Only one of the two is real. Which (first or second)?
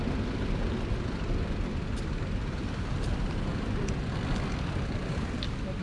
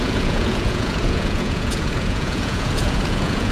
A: first